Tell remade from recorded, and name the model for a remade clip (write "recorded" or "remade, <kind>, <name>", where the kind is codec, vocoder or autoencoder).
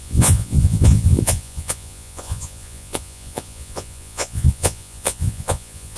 remade, vocoder, Vocos